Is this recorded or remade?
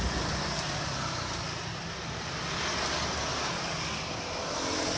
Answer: recorded